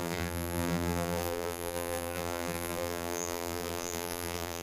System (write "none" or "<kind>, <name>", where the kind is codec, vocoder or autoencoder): vocoder, BigVGAN v2